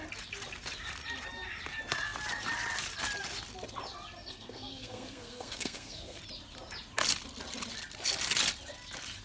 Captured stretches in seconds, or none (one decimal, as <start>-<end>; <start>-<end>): 0.0-4.2; 6.2-9.2